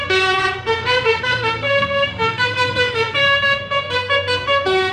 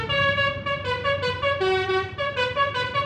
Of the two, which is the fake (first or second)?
first